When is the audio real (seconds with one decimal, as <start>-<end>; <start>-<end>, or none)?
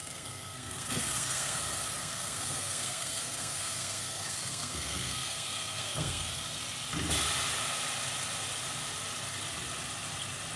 1.6-2.0; 6.4-10.6